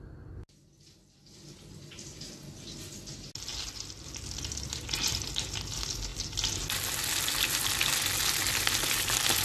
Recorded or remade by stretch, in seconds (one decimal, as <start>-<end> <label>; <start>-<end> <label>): 0.0-9.4 recorded

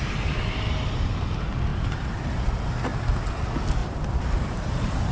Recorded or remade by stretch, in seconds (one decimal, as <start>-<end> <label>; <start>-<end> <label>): 0.0-1.7 recorded; 1.7-2.3 remade; 2.3-3.8 recorded; 3.8-5.1 remade

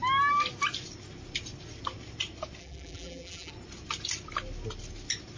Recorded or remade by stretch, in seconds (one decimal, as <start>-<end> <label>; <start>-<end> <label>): 0.0-2.6 recorded; 2.6-3.5 remade; 3.5-5.4 recorded

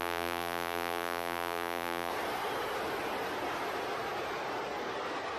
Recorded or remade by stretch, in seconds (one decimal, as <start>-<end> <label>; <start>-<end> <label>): 0.0-2.1 remade; 2.1-5.4 recorded

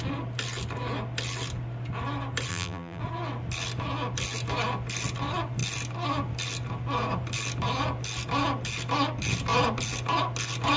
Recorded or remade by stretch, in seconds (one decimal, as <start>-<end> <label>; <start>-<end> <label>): 0.0-2.5 recorded; 2.5-3.0 remade; 3.0-10.8 recorded

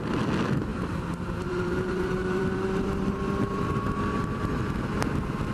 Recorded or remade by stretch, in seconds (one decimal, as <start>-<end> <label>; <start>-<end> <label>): 0.0-0.7 recorded; 0.7-4.0 remade; 4.0-5.5 recorded

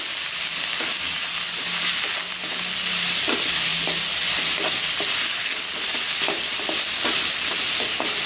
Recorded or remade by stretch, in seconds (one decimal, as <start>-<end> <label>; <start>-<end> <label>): 0.0-8.3 recorded